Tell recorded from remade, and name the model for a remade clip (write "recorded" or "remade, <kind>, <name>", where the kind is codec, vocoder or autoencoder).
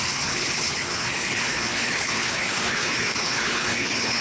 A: remade, codec, HILCodec